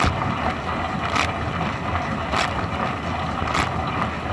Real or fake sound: real